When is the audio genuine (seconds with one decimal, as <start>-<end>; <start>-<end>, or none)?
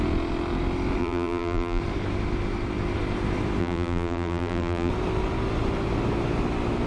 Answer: 0.0-1.0; 1.8-3.6; 4.9-6.9